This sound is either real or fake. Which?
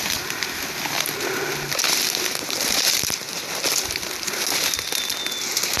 real